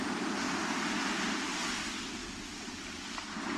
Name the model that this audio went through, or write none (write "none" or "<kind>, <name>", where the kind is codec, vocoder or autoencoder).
none